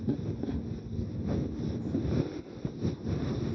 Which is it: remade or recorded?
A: recorded